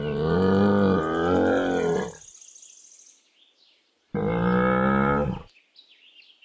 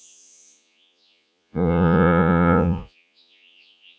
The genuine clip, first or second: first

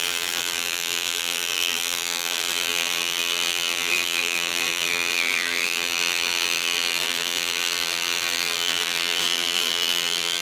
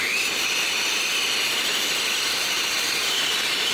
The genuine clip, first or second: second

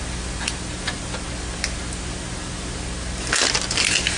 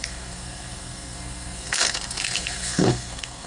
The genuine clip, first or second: first